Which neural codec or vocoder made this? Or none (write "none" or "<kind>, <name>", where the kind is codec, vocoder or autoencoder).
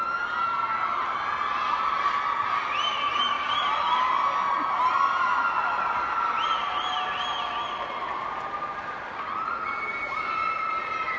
none